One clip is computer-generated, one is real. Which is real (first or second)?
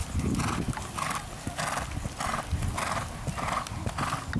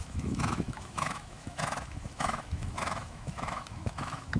first